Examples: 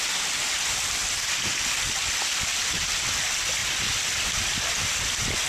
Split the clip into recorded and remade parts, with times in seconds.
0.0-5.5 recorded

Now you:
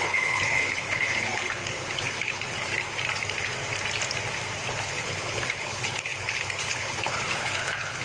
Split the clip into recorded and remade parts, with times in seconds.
0.0-2.7 remade; 2.7-4.7 recorded; 4.7-8.0 remade

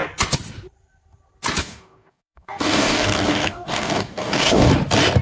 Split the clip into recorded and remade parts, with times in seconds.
0.0-1.6 recorded; 1.6-4.7 remade; 4.7-5.2 recorded

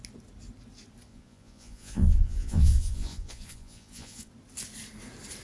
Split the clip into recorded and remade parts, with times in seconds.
0.0-1.1 recorded; 1.1-4.3 remade; 4.3-5.4 recorded

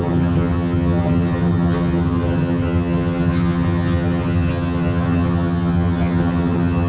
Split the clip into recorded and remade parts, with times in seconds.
0.0-6.9 remade